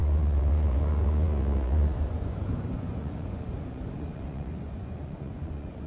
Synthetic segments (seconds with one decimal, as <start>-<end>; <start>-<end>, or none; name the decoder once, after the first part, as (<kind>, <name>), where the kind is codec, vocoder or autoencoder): 0.0-5.9 (vocoder, Vocos)